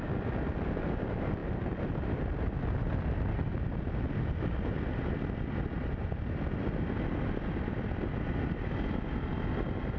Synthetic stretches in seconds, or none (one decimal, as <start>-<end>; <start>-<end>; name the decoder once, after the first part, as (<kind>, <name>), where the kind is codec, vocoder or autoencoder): none